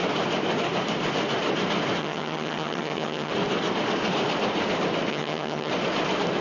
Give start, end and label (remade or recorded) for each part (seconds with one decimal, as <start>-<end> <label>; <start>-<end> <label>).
0.0-2.0 recorded; 2.0-3.3 remade; 3.3-5.1 recorded; 5.1-5.7 remade; 5.7-6.4 recorded